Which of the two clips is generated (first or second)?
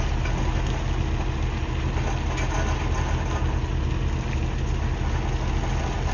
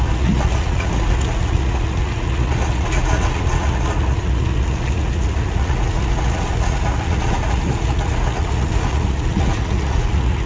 second